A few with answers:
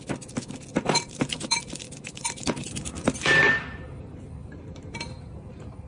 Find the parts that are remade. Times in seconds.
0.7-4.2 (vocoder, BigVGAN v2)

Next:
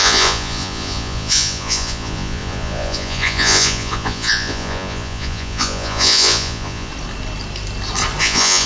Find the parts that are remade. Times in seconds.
0.0-6.9 (vocoder, Vocos); 8.2-8.7